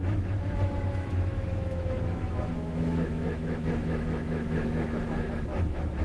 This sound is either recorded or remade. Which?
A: remade